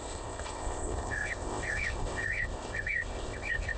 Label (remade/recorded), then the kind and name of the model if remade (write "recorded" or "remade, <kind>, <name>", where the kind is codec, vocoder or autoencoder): remade, codec, ZipCodec